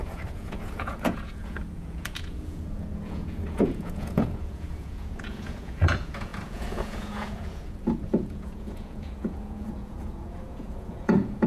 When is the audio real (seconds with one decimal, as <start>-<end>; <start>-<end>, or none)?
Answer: none